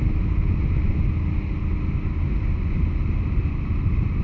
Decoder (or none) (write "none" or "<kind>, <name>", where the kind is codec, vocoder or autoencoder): none